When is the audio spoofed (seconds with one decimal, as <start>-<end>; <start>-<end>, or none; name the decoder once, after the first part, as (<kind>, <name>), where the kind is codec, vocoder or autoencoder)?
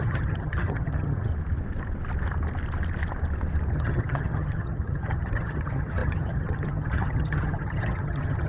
0.0-1.3 (vocoder, HiFi-GAN); 3.7-8.5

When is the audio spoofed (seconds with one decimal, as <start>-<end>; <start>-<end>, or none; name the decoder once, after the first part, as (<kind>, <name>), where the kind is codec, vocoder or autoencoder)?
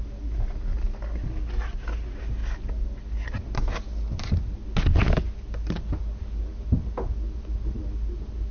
none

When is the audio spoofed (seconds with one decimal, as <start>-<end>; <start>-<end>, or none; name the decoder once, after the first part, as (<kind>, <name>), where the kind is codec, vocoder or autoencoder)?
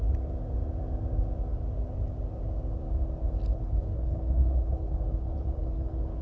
3.5-6.2 (codec, HILCodec)